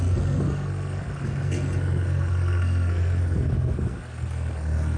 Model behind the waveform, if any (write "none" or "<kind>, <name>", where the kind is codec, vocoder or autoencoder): codec, SNAC